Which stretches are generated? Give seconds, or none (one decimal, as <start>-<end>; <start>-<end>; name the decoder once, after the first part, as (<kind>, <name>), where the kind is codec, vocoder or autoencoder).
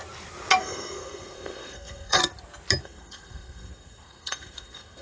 0.6-2.2 (codec, SNAC); 2.8-5.0